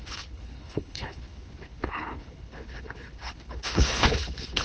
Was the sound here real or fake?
fake